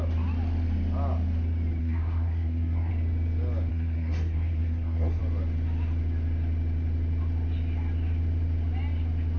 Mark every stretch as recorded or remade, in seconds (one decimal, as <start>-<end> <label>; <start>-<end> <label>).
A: 0.0-1.8 recorded; 1.8-2.9 remade; 2.9-3.7 recorded; 3.7-5.2 remade; 5.2-9.4 recorded